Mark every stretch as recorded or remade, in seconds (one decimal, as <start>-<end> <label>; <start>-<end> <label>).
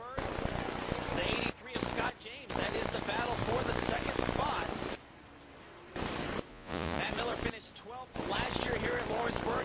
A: 0.0-6.5 recorded; 6.5-7.0 remade; 7.0-9.6 recorded